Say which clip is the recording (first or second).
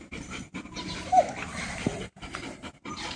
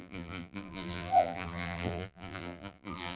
first